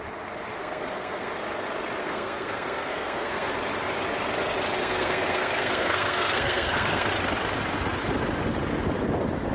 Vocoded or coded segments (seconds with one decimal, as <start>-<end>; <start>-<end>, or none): 0.6-1.3; 2.0-3.5; 4.8-7.1

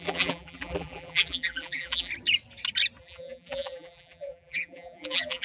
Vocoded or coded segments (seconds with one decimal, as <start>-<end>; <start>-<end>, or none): 0.0-2.1; 3.0-5.4

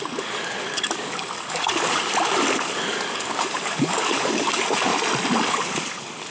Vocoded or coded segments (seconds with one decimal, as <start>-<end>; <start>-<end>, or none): 0.0-2.1; 2.6-4.9; 5.5-6.3

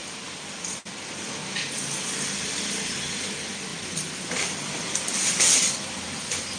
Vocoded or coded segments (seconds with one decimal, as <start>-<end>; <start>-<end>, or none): none

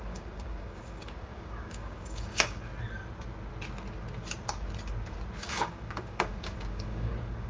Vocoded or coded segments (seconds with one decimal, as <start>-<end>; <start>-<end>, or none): 0.0-2.7; 5.4-7.5